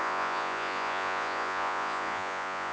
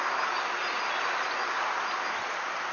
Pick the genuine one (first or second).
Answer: second